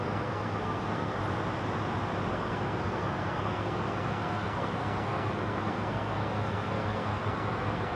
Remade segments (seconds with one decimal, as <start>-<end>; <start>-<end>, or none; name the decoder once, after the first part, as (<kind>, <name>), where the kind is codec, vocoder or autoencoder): 0.0-1.2 (codec, SNAC); 2.3-8.0